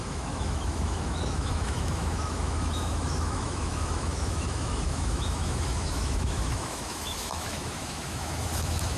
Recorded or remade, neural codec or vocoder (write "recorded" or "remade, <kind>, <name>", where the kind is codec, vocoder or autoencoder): remade, autoencoder, DAC-VAE